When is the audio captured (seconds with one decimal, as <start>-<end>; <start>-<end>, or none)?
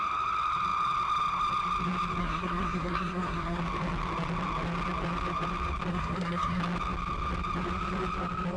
0.0-2.2; 3.6-5.9; 6.6-8.6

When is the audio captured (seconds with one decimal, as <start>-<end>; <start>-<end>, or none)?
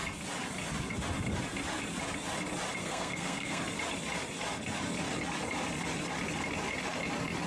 0.0-2.8; 3.6-7.5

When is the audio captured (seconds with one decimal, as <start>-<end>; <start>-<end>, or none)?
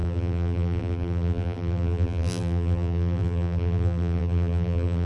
none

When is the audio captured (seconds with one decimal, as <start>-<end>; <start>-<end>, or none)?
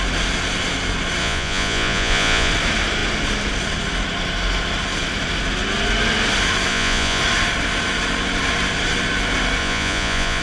0.0-1.2; 2.5-6.7; 7.2-9.6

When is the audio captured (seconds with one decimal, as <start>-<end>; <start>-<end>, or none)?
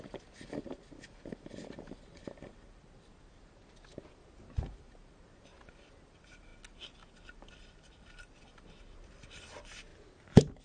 3.6-4.1; 6.5-7.5; 9.9-10.6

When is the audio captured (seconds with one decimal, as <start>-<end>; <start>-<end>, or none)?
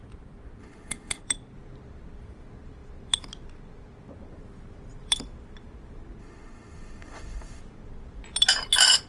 0.0-0.6; 1.2-6.2; 7.6-9.1